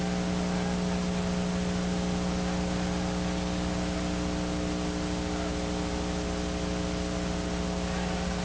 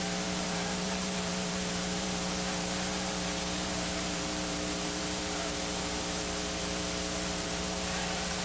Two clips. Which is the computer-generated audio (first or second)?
second